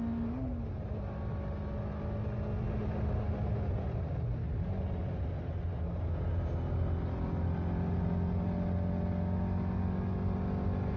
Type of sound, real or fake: real